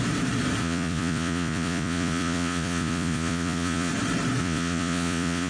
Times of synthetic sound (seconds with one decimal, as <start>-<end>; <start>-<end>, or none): 0.6-3.9; 4.4-5.5